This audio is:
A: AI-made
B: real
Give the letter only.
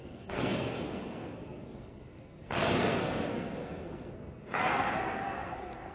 A